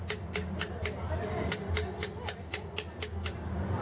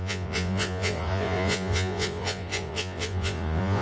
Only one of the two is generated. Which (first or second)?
second